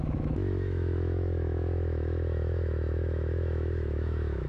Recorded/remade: remade